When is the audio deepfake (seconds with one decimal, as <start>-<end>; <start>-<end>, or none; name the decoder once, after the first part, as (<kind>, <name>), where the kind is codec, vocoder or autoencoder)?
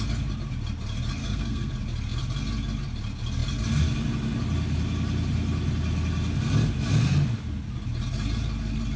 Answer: 1.2-1.7 (codec, SNAC)